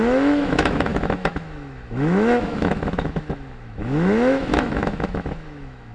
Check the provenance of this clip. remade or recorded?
remade